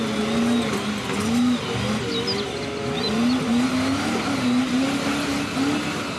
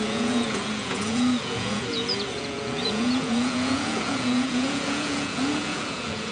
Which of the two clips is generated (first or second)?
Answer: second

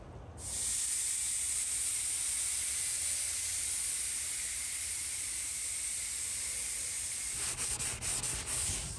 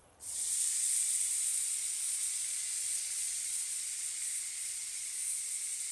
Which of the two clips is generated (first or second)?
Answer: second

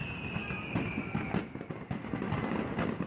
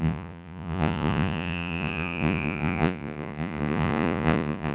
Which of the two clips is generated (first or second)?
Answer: second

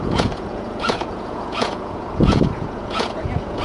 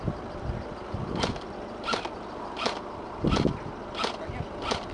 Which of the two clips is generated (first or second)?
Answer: first